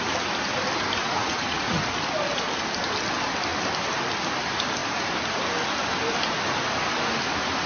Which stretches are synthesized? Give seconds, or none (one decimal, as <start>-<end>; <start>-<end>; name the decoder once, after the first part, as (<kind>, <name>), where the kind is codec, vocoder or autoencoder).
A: 1.0-1.8 (vocoder, Vocos)